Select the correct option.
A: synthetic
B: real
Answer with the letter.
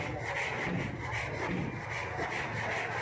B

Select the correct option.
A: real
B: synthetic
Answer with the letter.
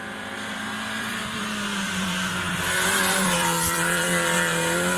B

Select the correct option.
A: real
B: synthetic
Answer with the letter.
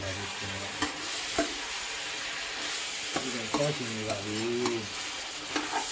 A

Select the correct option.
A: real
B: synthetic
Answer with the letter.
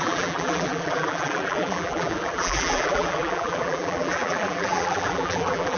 B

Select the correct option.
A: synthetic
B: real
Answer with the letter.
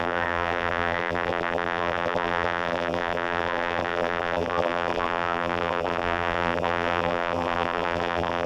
A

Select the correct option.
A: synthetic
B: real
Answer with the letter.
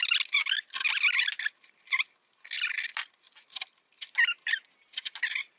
B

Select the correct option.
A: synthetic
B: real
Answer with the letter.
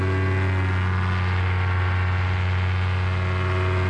B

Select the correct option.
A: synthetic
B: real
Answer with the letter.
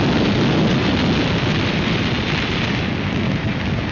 B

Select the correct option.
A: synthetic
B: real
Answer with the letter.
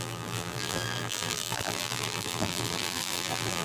A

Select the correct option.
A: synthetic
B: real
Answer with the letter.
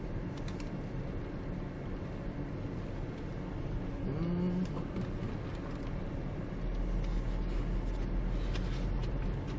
B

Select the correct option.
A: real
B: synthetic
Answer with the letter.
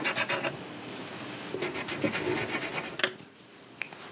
A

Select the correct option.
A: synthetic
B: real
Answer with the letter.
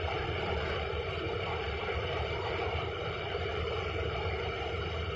A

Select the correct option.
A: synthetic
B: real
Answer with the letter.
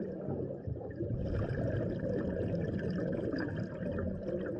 B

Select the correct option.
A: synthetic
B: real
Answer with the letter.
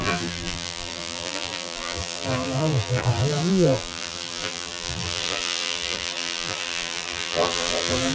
A